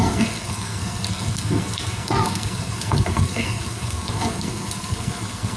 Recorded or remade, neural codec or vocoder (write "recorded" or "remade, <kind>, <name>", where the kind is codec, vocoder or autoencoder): remade, codec, SNAC